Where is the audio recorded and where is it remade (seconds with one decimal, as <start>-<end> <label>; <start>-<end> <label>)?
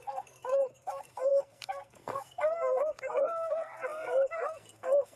0.0-5.2 remade